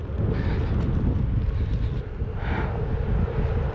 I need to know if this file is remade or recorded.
recorded